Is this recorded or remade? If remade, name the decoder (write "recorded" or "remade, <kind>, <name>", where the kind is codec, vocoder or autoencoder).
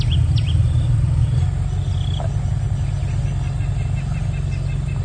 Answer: recorded